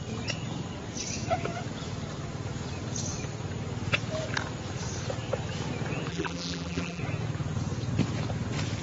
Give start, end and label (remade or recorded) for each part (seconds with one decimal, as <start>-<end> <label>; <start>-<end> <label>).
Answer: 0.0-6.1 recorded; 6.1-7.0 remade; 7.0-8.8 recorded